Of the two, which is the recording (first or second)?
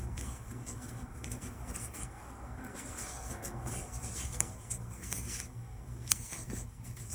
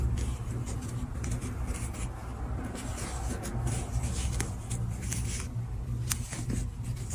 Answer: second